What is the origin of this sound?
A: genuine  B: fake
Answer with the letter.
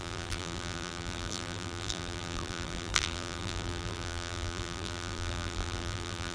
B